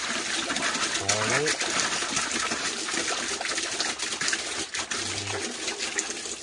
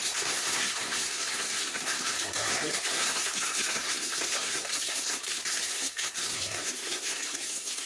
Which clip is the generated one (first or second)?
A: second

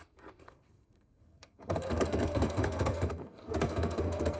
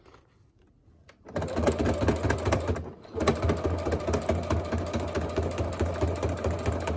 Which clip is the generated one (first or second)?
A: first